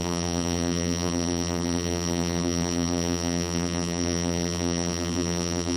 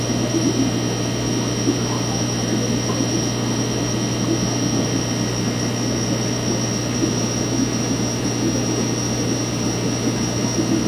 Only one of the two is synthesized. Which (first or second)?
first